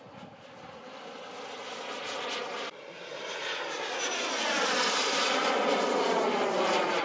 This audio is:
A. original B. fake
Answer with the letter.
A